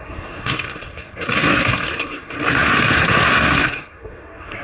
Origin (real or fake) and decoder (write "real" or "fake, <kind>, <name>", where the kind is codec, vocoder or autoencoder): fake, codec, SNAC